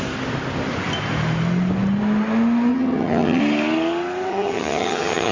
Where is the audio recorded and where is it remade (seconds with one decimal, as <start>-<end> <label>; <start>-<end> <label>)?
0.0-2.7 recorded; 2.7-3.4 remade; 3.4-4.3 recorded; 4.3-5.3 remade